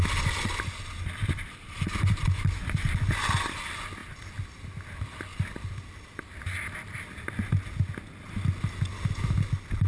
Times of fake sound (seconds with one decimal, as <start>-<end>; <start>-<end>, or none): none